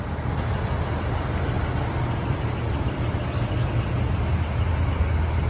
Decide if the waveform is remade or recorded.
recorded